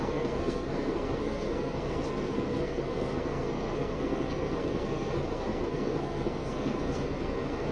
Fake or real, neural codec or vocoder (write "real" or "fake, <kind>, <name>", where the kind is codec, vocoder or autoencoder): fake, codec, SNAC